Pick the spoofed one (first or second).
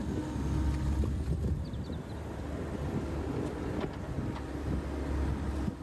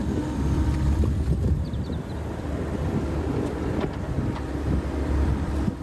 second